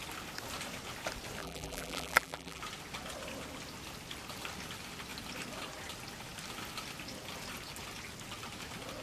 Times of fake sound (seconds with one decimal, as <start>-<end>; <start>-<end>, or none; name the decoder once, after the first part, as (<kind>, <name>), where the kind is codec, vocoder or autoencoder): 1.4-2.6 (vocoder, BigVGAN v2)